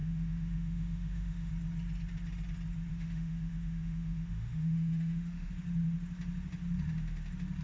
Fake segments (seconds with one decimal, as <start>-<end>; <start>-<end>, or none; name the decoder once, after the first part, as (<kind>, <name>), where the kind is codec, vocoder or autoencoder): 0.0-1.5 (autoencoder, DAC-VAE); 2.9-5.5